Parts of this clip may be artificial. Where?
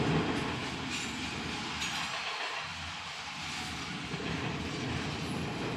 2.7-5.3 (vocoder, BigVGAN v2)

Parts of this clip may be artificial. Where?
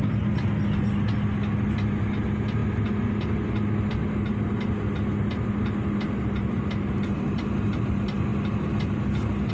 none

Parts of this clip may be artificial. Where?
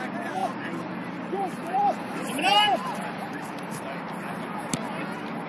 0.4-3.7 (vocoder, BigVGAN v2)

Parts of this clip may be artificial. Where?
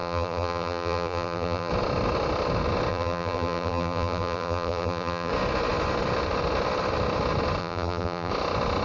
0.0-1.7 (vocoder, BigVGAN v2); 2.9-5.3; 7.6-8.3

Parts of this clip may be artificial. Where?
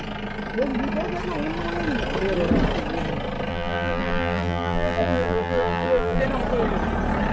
3.5-6.2 (vocoder, BigVGAN v2)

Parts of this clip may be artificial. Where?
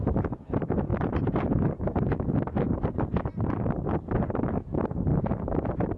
0.9-2.1 (vocoder, BigVGAN v2); 3.3-4.0; 5.1-6.0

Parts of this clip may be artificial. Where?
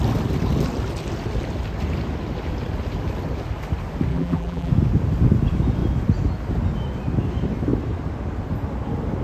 4.1-4.7 (vocoder, BigVGAN v2)